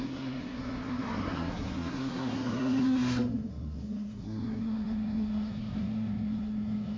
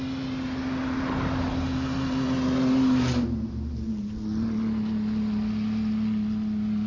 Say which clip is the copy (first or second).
first